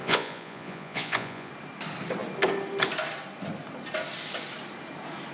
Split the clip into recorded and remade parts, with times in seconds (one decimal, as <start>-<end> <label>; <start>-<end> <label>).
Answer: 0.0-1.5 remade; 1.5-5.3 recorded